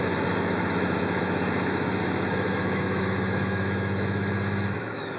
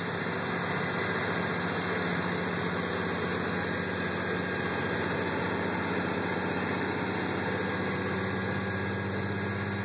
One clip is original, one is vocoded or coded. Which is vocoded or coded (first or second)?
first